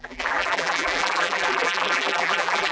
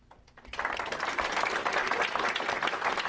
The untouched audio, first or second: second